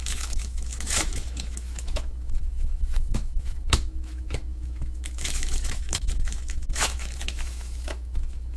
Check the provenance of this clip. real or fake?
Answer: fake